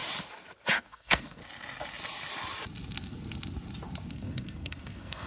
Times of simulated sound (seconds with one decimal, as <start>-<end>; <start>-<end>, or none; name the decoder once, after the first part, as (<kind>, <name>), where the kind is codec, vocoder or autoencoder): 0.7-1.4 (codec, SNAC); 4.1-5.3